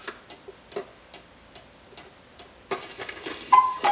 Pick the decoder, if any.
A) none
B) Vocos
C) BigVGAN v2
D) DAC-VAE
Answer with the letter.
A